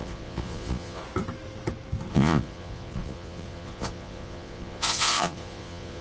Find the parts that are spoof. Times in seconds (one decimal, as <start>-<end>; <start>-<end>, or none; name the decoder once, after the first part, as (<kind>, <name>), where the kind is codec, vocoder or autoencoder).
0.0-1.0 (vocoder, Vocos); 2.1-6.0